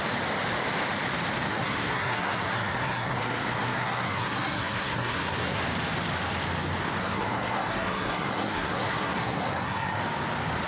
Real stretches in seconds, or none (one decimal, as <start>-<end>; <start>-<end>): 0.0-1.5; 5.6-7.0; 10.0-10.7